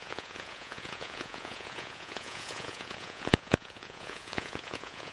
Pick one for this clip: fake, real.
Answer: fake